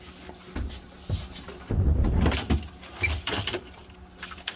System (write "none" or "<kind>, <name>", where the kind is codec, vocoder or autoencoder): none